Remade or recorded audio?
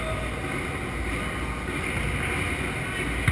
recorded